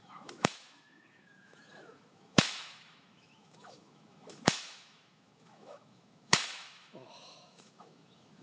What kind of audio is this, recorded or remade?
remade